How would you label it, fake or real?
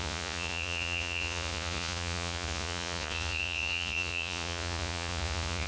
fake